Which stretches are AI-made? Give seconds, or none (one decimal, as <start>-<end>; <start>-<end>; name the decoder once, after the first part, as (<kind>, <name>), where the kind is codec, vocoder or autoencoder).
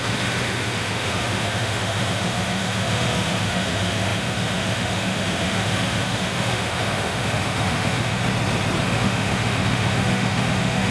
0.0-8.2 (autoencoder, DAC-VAE); 8.8-10.9